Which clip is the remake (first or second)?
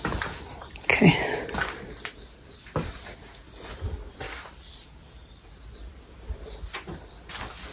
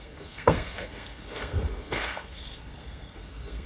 second